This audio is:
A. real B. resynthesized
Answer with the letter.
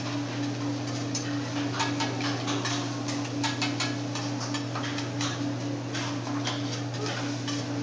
A